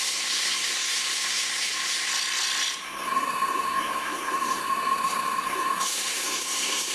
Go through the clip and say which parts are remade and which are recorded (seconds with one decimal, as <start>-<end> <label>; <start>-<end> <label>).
0.0-2.1 remade; 2.1-2.8 recorded; 2.8-6.9 remade